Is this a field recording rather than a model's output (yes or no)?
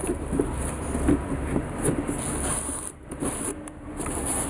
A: yes